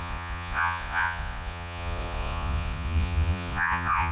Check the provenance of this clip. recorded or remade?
remade